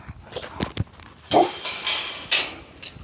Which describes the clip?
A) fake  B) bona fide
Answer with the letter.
B